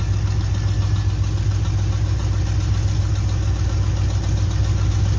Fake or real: real